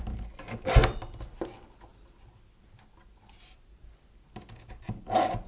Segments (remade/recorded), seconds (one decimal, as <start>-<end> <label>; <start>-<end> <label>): 0.0-5.5 recorded